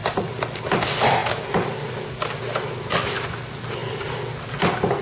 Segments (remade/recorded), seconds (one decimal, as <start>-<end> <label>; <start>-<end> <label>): 0.0-5.0 recorded